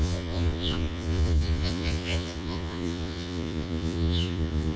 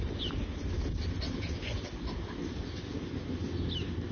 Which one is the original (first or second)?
second